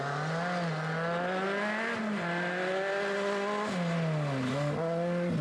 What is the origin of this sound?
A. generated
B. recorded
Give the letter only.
B